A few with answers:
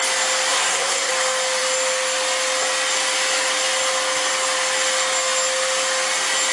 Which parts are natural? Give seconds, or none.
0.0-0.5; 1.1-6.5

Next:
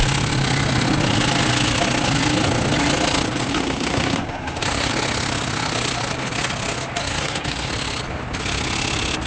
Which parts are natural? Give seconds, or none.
0.0-3.5; 4.9-7.0; 7.7-9.3

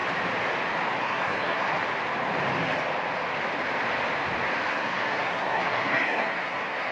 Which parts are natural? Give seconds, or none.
0.0-1.0; 1.7-4.7

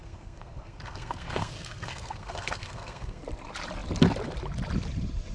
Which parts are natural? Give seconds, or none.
3.2-5.3

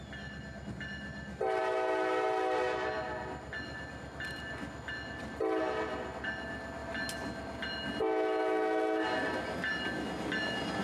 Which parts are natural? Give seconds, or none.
0.0-10.8